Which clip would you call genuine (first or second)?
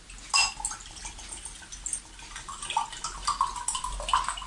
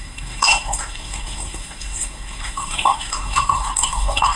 first